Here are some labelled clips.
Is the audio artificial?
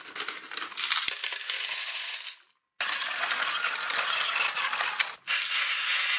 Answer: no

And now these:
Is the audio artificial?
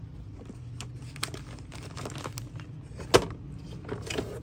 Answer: no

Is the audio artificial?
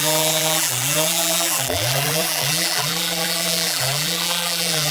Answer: yes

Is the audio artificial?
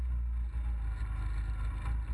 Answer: no